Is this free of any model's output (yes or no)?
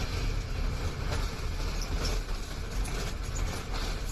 yes